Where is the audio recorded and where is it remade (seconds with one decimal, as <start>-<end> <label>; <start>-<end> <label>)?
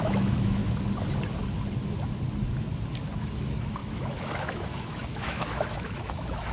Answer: 0.0-0.6 remade; 0.6-3.2 recorded; 3.2-6.5 remade